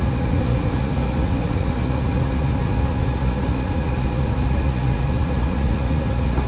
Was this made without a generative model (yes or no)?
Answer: no